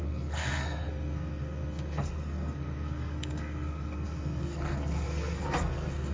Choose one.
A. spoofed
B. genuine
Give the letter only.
A